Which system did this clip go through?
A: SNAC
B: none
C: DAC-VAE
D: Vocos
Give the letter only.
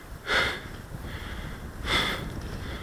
B